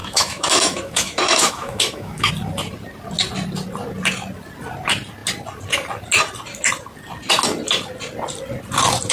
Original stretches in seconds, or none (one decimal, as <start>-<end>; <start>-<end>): 2.3-9.1